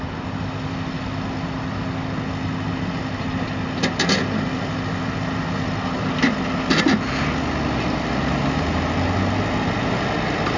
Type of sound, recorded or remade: recorded